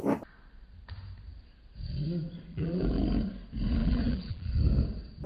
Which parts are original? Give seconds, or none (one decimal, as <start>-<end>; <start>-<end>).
0.0-2.5; 3.0-3.8; 4.6-5.3